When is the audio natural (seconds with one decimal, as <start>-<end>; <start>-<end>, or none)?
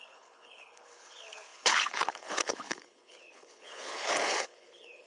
none